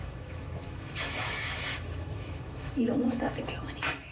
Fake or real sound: fake